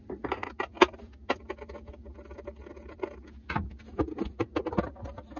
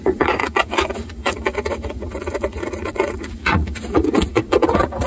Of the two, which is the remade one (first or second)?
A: second